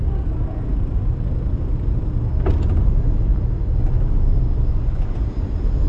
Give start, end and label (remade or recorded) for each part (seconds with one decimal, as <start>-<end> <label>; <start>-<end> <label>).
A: 0.0-5.9 recorded

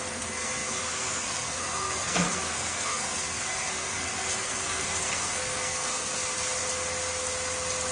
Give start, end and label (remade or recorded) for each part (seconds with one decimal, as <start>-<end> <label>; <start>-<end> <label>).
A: 0.0-6.6 remade; 6.6-7.9 recorded

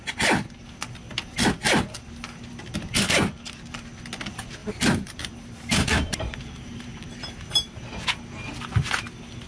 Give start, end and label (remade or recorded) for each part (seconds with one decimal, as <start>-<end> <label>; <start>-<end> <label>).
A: 0.0-4.6 recorded; 4.6-7.9 remade; 7.9-9.5 recorded